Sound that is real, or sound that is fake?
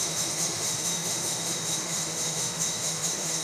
fake